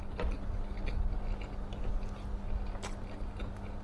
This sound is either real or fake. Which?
real